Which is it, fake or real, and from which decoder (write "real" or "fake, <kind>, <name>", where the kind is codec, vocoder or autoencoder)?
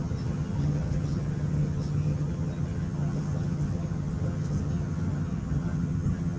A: fake, vocoder, HiFi-GAN